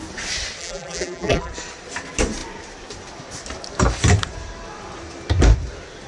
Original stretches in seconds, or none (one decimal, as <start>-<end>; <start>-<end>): 0.0-0.6; 1.5-6.1